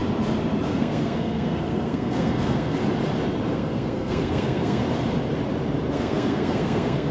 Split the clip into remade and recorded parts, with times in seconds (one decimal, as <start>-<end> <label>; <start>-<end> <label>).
0.0-0.7 recorded; 0.7-2.8 remade; 2.8-3.5 recorded; 3.5-4.8 remade; 4.8-5.9 recorded; 5.9-7.1 remade